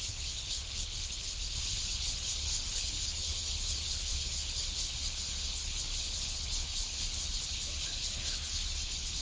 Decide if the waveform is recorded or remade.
remade